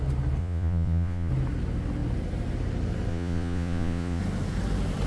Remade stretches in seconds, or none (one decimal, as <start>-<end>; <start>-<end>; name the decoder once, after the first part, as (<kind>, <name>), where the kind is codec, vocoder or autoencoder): 0.4-1.3 (vocoder, Vocos); 3.1-4.2